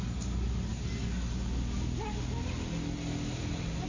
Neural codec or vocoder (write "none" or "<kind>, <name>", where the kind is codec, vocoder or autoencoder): none